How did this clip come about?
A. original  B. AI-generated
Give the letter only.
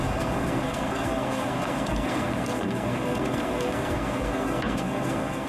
B